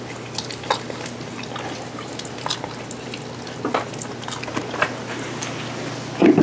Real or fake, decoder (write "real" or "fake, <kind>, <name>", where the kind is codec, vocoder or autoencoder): real